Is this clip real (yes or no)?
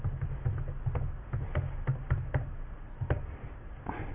yes